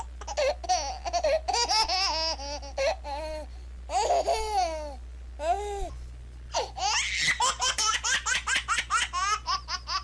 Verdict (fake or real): real